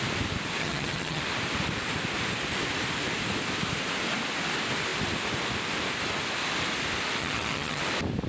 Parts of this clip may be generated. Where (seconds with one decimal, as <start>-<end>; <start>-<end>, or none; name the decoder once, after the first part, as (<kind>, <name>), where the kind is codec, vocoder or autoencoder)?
0.6-1.2 (vocoder, HiFi-GAN); 7.2-7.8